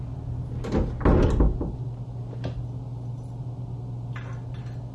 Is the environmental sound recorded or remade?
recorded